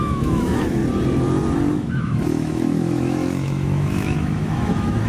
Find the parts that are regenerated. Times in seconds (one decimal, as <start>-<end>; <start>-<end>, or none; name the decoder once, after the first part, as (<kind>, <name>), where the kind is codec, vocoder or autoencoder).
0.0-0.8 (autoencoder, DAC-VAE); 1.7-5.1

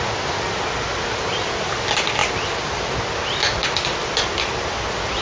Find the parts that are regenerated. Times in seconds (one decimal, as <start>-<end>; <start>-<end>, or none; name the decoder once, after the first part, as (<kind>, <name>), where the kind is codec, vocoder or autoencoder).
none

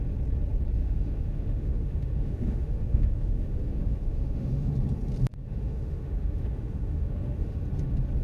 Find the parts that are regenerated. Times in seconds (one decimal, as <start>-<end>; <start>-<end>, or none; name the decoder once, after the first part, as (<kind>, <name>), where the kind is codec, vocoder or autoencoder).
0.8-4.7 (autoencoder, DAC-VAE); 5.4-7.6

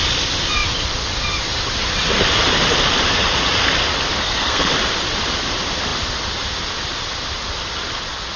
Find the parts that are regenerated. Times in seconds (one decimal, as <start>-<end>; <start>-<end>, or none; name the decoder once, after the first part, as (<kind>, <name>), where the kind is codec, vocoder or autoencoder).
4.2-4.7 (codec, SNAC)